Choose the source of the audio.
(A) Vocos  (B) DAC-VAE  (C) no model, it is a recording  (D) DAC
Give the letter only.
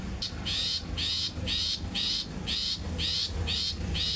C